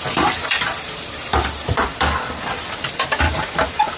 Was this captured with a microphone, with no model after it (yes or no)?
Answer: no